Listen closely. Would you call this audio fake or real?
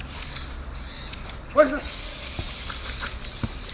real